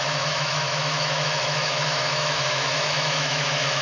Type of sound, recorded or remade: remade